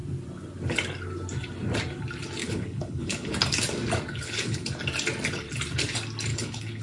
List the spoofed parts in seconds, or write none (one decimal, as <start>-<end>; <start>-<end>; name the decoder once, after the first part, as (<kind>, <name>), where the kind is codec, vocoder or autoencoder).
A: 2.4-3.3 (codec, HILCodec); 4.1-4.7; 6.3-6.8